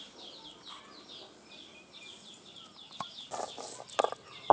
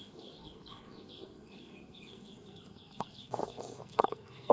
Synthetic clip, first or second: second